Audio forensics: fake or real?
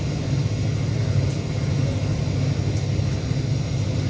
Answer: real